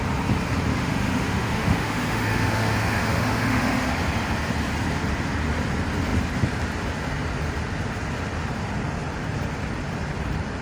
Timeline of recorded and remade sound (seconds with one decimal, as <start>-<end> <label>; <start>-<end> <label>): 0.0-0.7 recorded; 0.7-3.9 remade; 3.9-10.6 recorded